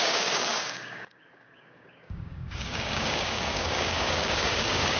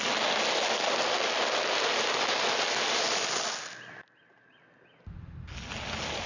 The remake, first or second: first